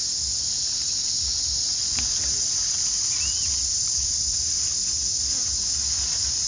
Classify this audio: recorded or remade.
recorded